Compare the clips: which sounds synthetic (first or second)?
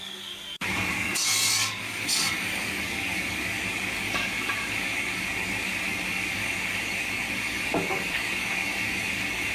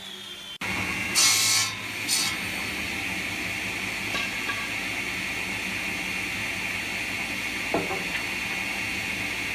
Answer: first